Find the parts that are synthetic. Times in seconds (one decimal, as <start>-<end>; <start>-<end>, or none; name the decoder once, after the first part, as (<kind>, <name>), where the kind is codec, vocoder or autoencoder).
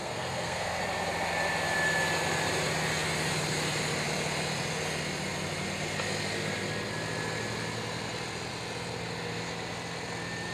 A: 0.0-0.8 (codec, SNAC)